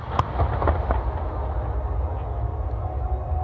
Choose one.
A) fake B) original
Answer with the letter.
B